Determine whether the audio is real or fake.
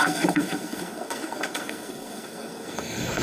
fake